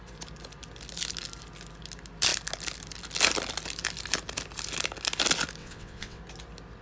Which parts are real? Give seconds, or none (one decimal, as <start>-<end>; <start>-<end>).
0.0-5.6; 6.2-6.8